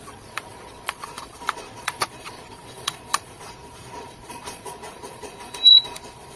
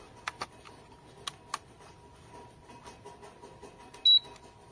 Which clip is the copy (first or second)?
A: first